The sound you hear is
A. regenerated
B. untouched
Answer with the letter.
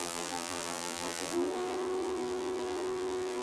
A